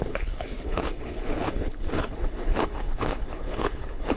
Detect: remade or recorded remade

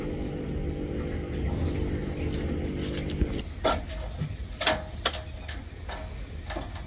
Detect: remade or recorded recorded